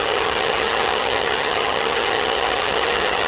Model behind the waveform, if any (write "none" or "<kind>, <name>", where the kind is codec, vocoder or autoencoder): vocoder, HiFi-GAN